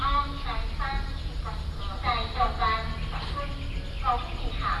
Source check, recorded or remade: recorded